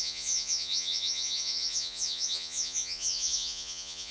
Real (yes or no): no